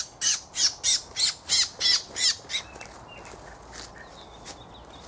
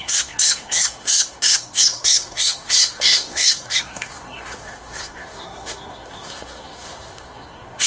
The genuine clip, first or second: first